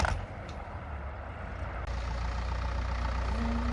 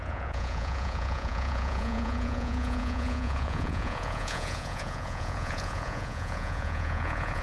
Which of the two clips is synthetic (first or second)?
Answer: second